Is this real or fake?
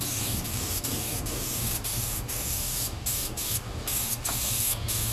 fake